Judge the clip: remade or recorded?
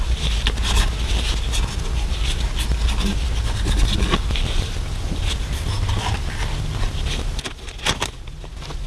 recorded